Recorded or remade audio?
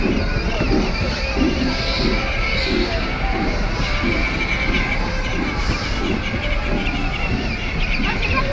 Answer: recorded